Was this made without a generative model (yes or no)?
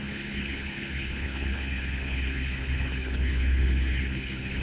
no